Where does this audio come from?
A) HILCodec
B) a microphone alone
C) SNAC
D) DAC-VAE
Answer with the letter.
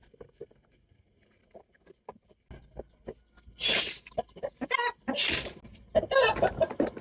B